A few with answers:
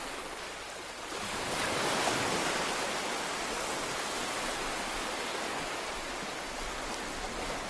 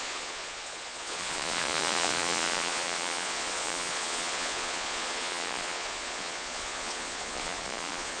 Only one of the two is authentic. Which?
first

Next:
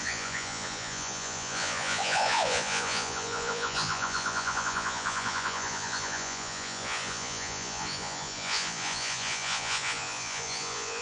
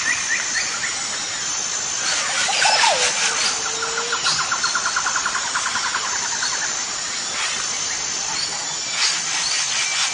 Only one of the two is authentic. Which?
second